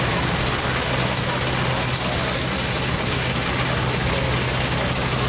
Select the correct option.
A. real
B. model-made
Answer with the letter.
A